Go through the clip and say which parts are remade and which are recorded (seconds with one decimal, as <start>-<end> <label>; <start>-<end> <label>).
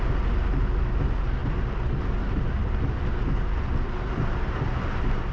0.0-5.3 recorded